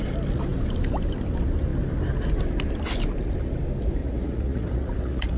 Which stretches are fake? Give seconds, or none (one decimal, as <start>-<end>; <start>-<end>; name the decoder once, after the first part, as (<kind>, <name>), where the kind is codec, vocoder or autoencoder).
4.0-5.4 (vocoder, Vocos)